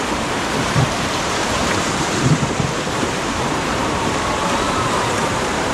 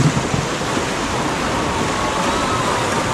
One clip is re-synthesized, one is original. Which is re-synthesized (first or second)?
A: first